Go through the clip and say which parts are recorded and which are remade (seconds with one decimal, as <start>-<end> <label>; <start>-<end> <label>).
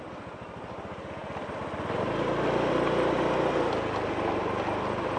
0.0-5.2 recorded